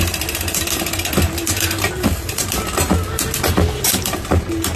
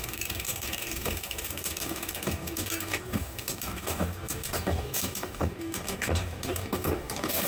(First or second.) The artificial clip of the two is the second